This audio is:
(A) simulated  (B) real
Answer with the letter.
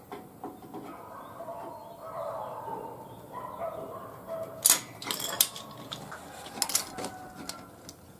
B